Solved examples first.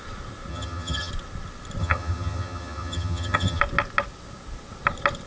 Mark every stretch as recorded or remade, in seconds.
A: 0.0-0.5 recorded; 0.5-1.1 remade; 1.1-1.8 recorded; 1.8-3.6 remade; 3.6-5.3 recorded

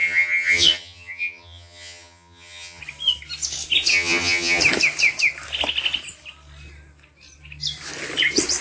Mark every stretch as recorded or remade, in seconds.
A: 0.0-2.8 remade; 2.8-3.9 recorded; 3.9-4.6 remade; 4.6-8.6 recorded

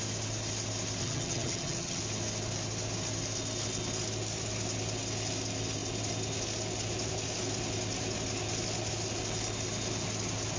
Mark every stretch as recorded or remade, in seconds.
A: 0.0-1.0 recorded; 1.0-2.0 remade; 2.0-10.6 recorded